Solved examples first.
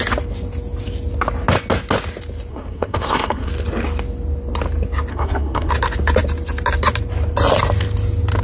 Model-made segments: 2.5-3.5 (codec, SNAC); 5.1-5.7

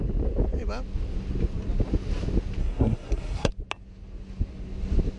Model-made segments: 2.6-3.5 (codec, SNAC)

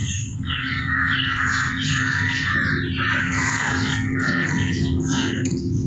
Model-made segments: 0.0-2.5 (codec, SNAC); 3.2-5.9

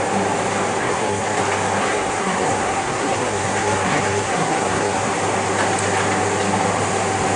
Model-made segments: 0.8-1.4 (codec, SNAC); 1.8-5.1

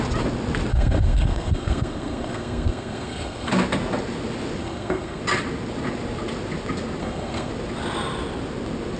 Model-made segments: 0.7-3.5 (codec, SNAC); 4.6-5.2; 7.0-7.5

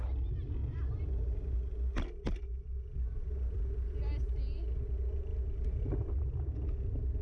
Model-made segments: none